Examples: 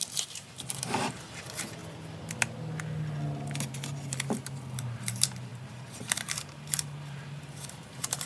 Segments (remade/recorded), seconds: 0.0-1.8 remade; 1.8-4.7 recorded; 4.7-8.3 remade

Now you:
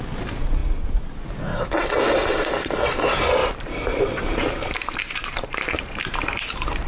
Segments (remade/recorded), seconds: 0.0-3.4 recorded; 3.4-6.2 remade; 6.2-6.9 recorded

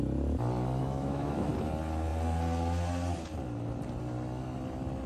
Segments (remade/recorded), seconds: 0.0-0.8 recorded; 0.8-1.5 remade; 1.5-5.1 recorded

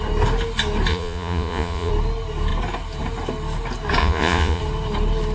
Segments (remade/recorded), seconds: 0.0-0.9 recorded; 0.9-1.9 remade; 1.9-4.0 recorded; 4.0-4.6 remade; 4.6-5.3 recorded

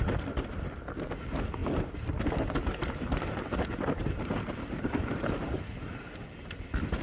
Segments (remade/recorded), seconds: 0.0-1.6 recorded; 1.6-2.3 remade; 2.3-4.0 recorded; 4.0-5.6 remade; 5.6-7.0 recorded

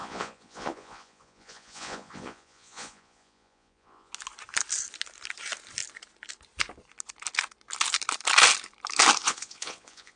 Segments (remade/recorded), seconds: 0.0-4.1 remade; 4.1-9.2 recorded; 9.2-10.2 remade

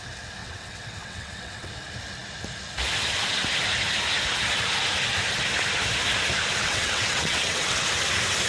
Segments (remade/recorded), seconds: 0.0-0.4 recorded; 0.4-1.7 remade; 1.7-6.6 recorded; 6.6-7.9 remade; 7.9-8.5 recorded

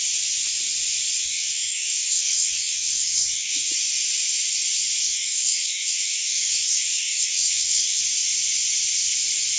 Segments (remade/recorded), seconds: 0.0-1.2 recorded; 1.2-3.7 remade; 3.7-5.0 recorded; 5.0-8.0 remade; 8.0-9.6 recorded